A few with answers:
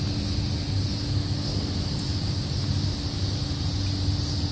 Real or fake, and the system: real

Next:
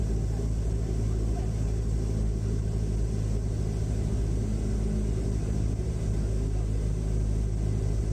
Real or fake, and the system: real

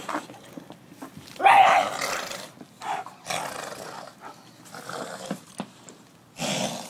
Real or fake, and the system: real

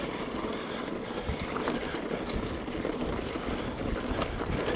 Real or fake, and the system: real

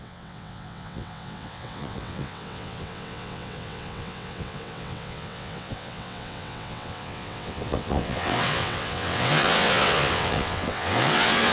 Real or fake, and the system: fake, vocoder, WaveNeXt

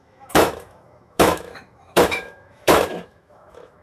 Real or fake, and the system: fake, autoencoder, DAC-VAE